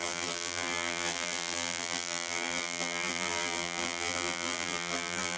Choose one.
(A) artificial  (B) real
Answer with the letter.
A